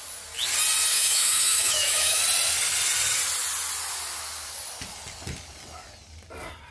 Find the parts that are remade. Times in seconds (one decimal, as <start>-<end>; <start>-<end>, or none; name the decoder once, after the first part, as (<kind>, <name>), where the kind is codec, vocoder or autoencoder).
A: 0.9-2.2 (autoencoder, DAC-VAE)